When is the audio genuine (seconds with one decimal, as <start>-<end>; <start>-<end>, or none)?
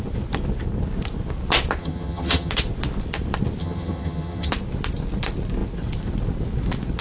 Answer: 0.0-1.8; 2.5-3.6; 4.5-7.0